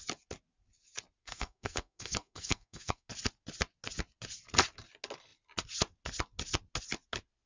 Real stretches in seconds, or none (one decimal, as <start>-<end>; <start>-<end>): 0.0-1.2; 3.1-7.5